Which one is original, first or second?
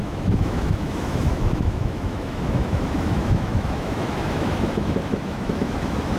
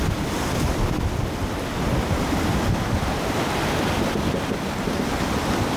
second